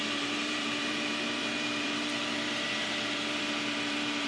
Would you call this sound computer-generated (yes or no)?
yes